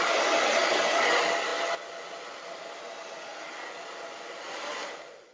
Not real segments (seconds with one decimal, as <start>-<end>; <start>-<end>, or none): none